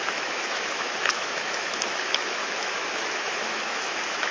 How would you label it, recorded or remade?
remade